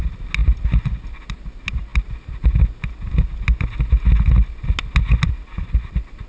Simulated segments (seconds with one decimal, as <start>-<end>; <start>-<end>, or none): none